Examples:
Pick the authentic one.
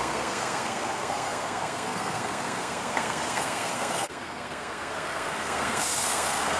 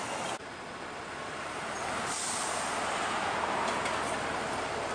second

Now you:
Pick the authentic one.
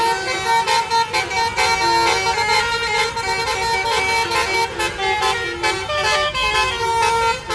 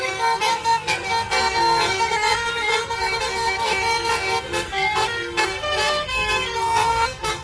first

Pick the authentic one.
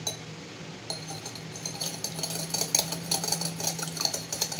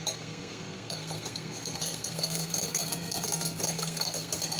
first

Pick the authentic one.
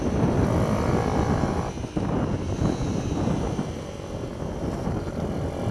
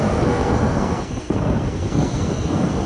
first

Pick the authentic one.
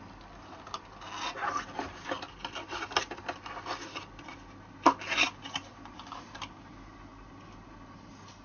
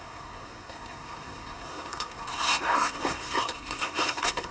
first